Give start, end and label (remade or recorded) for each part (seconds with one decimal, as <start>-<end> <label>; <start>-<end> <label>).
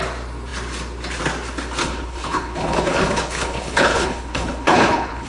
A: 0.0-1.8 recorded; 1.8-5.3 remade